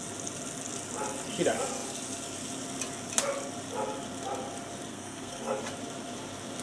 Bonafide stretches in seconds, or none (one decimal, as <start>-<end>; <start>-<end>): 0.0-4.9; 5.6-6.6